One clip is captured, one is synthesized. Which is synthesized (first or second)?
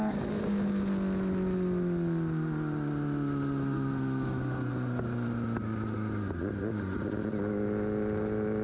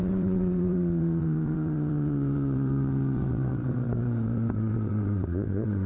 second